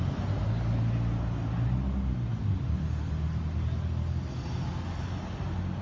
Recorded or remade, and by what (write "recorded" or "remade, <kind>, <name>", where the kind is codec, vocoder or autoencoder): recorded